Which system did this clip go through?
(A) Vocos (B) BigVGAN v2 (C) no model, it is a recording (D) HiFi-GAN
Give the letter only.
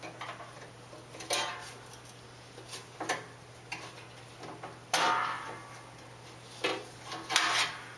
C